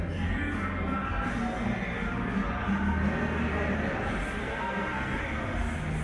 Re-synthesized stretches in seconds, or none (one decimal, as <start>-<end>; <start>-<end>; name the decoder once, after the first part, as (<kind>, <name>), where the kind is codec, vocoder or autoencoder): 4.4-5.2 (codec, SNAC)